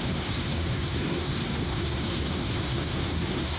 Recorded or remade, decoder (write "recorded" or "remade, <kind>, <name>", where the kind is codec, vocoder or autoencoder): remade, codec, SNAC